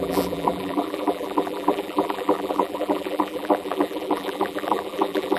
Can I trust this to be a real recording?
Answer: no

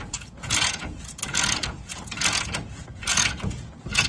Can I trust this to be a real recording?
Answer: no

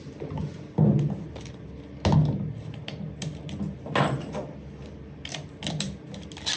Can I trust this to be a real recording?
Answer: yes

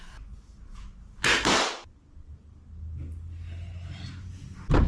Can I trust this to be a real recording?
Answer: yes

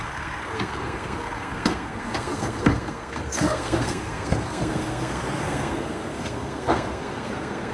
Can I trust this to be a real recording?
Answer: no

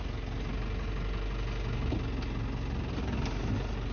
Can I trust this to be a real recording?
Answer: yes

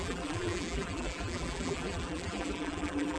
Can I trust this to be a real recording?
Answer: no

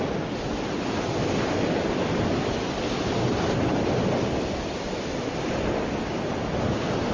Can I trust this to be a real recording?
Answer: yes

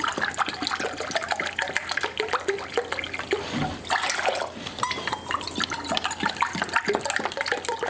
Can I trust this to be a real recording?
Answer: yes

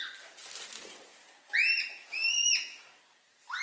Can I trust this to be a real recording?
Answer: yes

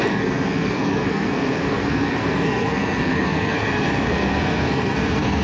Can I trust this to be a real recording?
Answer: no